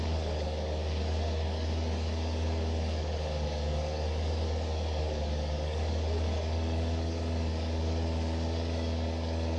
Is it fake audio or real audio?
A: fake